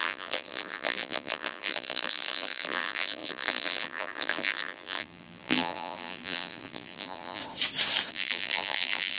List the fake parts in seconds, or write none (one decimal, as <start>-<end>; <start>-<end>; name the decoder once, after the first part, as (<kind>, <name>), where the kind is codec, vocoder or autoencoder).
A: 0.0-7.4 (vocoder, BigVGAN v2); 8.1-9.2